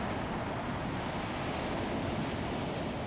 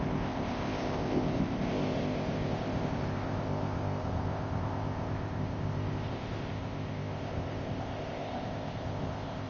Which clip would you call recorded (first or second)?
first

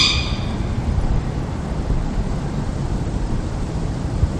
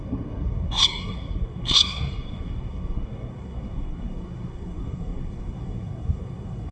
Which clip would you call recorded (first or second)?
first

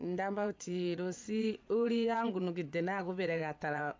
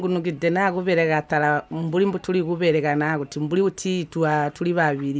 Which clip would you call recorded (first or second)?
second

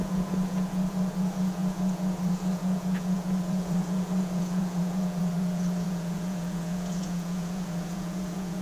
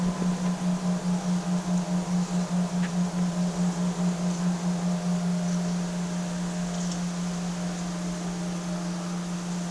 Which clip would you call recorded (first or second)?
second